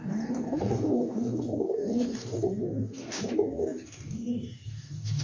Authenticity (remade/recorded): remade